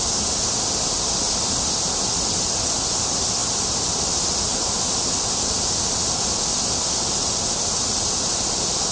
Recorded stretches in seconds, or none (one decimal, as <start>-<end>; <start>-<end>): 0.0-8.9